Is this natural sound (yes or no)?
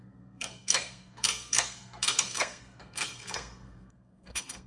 no